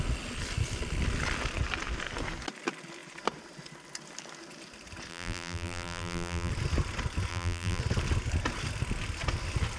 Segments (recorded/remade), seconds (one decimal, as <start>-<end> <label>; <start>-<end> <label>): 0.0-5.1 recorded; 5.1-6.5 remade; 6.5-7.3 recorded; 7.3-7.8 remade; 7.8-9.8 recorded